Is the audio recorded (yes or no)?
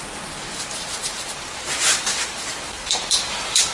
no